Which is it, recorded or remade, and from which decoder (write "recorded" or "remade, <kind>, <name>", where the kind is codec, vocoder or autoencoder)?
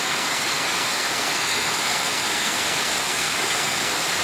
remade, codec, SNAC